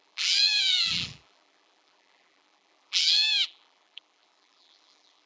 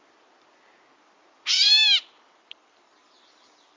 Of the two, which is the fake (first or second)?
first